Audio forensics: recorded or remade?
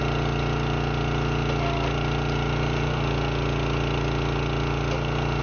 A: recorded